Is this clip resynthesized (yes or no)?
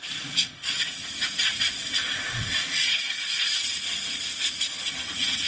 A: yes